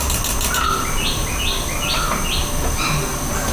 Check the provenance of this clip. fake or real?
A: real